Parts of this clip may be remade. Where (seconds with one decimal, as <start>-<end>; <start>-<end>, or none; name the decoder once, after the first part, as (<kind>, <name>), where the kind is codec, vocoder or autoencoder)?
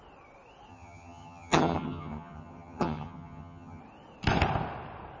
0.7-3.8 (vocoder, HiFi-GAN)